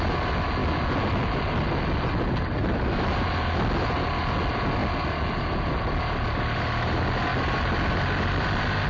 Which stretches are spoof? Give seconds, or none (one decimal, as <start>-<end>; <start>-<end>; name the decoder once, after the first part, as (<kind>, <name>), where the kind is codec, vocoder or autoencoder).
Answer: none